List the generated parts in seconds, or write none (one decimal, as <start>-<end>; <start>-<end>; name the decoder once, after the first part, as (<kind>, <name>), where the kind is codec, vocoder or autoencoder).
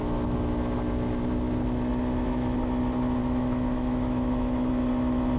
3.2-4.7 (autoencoder, DAC-VAE)